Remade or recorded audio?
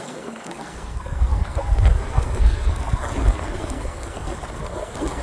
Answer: remade